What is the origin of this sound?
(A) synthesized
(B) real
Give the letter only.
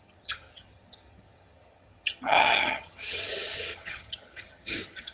A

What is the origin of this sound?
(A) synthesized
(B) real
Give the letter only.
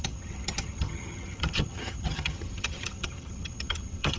A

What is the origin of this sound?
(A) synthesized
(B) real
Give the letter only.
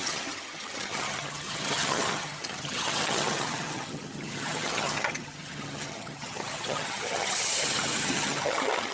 A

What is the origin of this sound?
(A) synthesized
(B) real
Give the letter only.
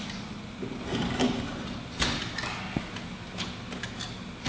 B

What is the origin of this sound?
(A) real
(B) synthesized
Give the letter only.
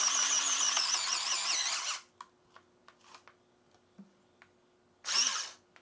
A